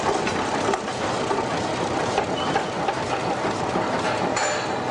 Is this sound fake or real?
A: real